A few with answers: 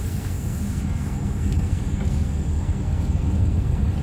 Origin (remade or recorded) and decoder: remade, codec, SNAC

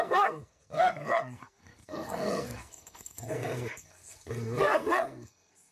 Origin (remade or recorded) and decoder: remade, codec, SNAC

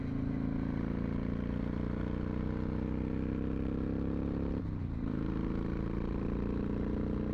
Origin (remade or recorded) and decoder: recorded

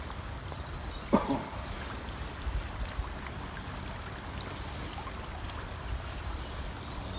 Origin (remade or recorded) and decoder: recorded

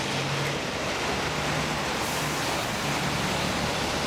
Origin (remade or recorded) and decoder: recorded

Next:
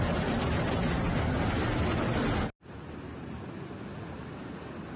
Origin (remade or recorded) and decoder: recorded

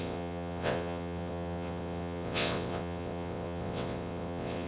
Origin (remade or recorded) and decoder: remade, vocoder, WaveNeXt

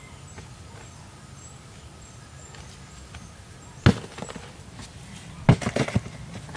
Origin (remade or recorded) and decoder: recorded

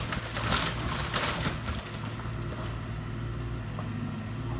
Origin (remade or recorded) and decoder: recorded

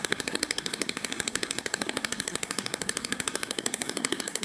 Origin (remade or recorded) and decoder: remade, codec, SNAC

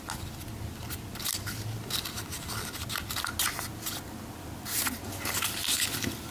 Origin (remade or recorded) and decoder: recorded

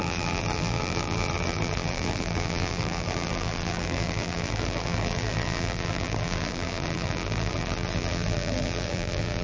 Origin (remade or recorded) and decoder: remade, vocoder, BigVGAN v2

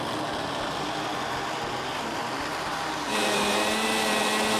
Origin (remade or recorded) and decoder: recorded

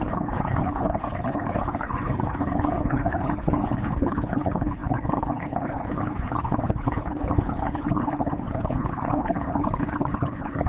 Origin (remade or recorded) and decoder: remade, codec, HILCodec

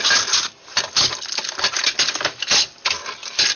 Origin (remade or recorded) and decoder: recorded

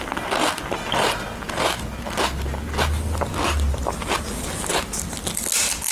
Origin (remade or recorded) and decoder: recorded